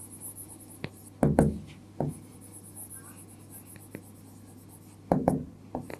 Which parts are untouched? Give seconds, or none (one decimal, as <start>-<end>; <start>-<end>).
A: 0.0-6.0